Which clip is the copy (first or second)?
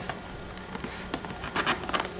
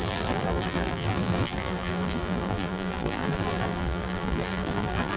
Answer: second